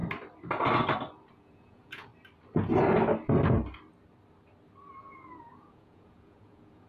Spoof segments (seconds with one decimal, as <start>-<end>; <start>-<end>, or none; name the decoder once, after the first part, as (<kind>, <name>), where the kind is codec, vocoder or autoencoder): 1.3-2.1 (vocoder, Vocos); 5.0-6.9